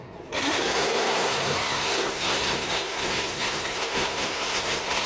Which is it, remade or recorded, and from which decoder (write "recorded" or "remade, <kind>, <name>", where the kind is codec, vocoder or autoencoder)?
remade, codec, SNAC